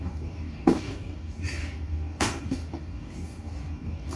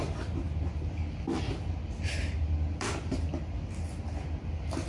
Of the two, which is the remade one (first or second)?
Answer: first